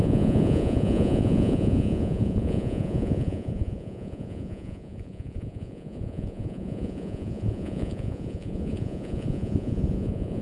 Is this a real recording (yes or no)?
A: no